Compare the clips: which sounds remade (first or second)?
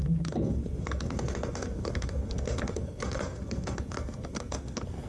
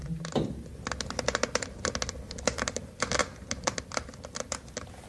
first